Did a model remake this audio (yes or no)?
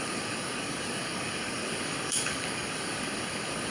yes